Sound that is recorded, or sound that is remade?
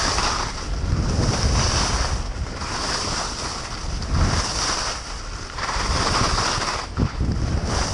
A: recorded